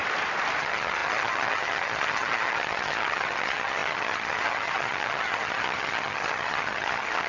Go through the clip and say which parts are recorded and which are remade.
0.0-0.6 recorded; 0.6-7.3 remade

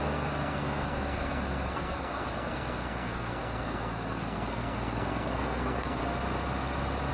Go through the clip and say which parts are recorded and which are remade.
0.0-6.0 remade; 6.0-7.1 recorded

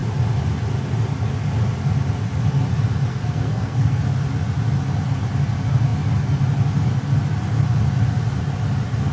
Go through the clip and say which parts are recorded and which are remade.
0.0-3.1 recorded; 3.1-4.0 remade; 4.0-9.1 recorded